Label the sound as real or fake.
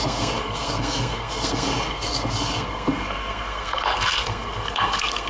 fake